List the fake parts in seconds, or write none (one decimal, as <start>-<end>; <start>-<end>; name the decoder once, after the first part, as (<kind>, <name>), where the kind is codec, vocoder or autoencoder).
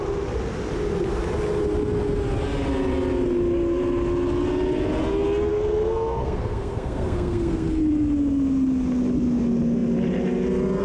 5.5-7.8 (codec, SNAC)